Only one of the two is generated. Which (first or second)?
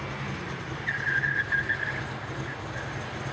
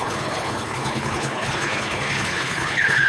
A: second